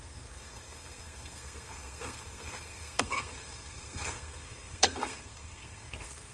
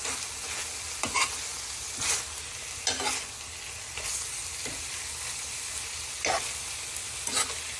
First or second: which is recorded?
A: second